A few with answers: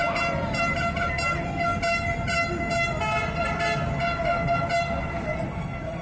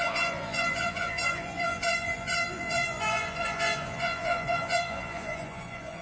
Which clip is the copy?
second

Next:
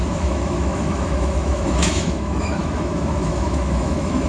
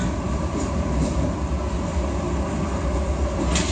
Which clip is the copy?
first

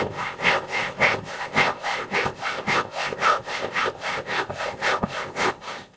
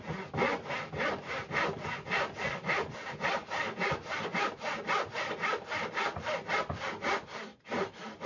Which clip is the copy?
first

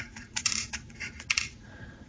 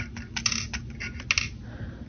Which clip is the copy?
first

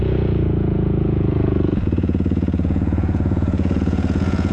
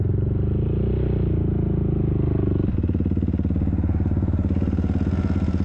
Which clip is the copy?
first